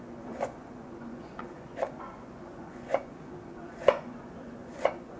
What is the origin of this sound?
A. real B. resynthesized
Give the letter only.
B